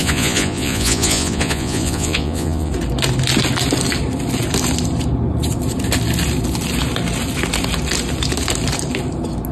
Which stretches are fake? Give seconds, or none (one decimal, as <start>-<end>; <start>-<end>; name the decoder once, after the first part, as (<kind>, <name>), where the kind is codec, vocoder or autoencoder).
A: 0.0-2.7 (vocoder, Vocos)